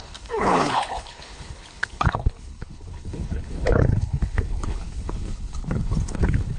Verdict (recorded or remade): remade